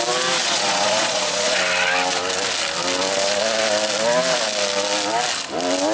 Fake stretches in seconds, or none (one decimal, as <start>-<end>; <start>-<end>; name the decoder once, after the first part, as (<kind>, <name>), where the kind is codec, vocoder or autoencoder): 0.4-1.6 (vocoder, Vocos)